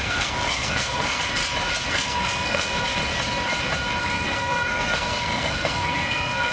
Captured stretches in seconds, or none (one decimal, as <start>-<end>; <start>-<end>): 1.4-1.9; 3.0-4.0